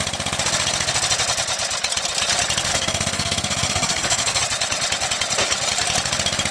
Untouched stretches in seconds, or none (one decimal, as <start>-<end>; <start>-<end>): 0.0-2.7; 4.4-6.5